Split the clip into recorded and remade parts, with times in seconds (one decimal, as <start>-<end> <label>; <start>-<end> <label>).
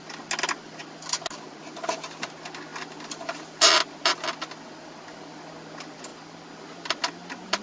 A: 0.0-7.6 recorded